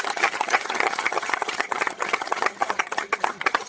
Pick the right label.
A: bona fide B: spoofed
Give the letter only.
B